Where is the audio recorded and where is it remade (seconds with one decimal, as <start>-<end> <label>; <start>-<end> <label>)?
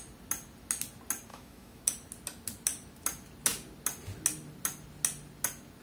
0.0-1.3 recorded; 1.3-1.8 remade; 1.8-5.8 recorded